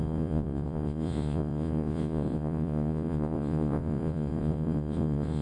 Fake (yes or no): yes